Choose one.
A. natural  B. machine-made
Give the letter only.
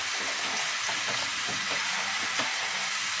A